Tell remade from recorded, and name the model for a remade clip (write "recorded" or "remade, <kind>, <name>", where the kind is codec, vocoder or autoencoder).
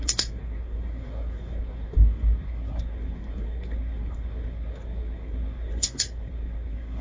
remade, codec, SNAC